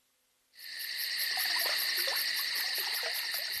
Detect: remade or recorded recorded